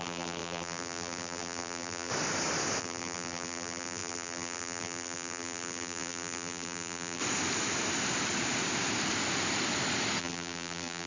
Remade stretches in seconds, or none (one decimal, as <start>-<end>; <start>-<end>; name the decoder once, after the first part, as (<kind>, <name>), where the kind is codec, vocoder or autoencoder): 0.0-2.1 (vocoder, BigVGAN v2); 2.8-7.2; 10.2-11.1